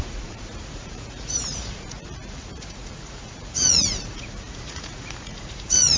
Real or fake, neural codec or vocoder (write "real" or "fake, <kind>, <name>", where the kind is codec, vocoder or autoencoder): fake, vocoder, Vocos